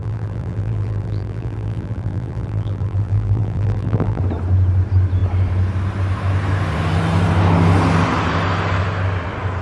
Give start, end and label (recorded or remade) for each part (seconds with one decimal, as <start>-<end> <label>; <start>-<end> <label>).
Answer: 0.0-4.2 remade; 4.2-9.6 recorded